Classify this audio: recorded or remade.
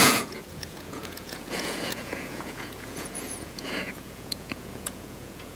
remade